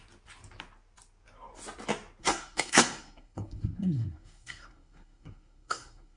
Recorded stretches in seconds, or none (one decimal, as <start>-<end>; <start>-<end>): 0.0-2.2